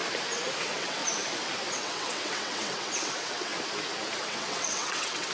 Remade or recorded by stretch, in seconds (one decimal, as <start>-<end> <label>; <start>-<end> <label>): 0.0-0.6 recorded; 0.6-1.0 remade; 1.0-1.7 recorded; 1.7-3.5 remade; 3.5-4.2 recorded; 4.2-5.3 remade

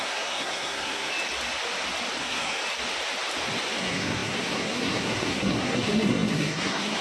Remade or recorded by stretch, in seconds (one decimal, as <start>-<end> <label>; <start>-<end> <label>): 0.0-1.1 remade; 1.1-2.2 recorded; 2.2-2.6 remade; 2.6-3.8 recorded; 3.8-7.0 remade

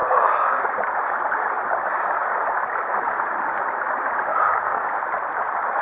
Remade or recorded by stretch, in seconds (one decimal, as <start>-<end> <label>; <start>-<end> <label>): 0.0-0.6 remade; 0.6-4.3 recorded; 4.3-4.9 remade; 4.9-5.8 recorded

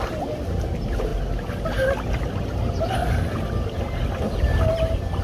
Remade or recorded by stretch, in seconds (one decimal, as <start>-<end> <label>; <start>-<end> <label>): 0.0-5.2 recorded

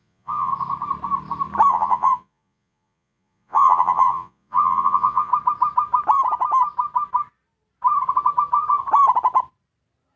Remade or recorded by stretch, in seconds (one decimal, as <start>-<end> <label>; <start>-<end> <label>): 0.0-0.5 remade; 0.5-1.7 recorded; 1.7-5.3 remade; 5.3-10.2 recorded

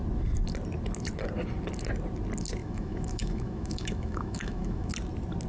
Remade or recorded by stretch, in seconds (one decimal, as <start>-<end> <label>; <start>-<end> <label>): 0.0-2.6 recorded; 2.6-4.9 remade; 4.9-5.5 recorded